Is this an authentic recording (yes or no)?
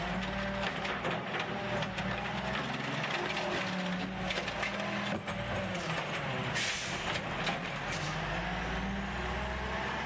yes